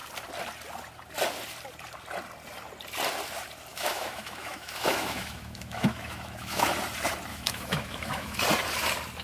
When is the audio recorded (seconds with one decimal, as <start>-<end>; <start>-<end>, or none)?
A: 0.0-3.7; 6.7-7.3; 8.4-9.2